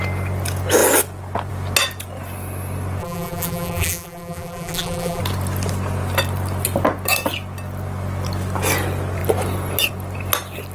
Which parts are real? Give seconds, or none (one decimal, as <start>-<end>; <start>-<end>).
0.0-3.0; 5.2-10.7